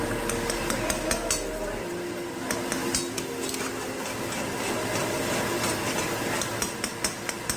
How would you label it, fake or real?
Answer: real